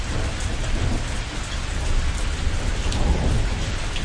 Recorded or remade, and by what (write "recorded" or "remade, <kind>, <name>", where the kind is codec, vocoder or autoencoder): recorded